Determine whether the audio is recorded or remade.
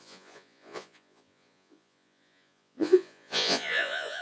remade